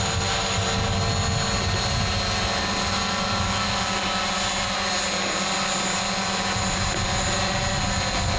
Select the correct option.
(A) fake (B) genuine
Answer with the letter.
B